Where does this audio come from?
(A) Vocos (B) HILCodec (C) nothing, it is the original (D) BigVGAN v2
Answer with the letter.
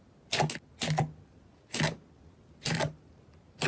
C